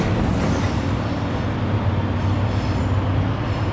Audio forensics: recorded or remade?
recorded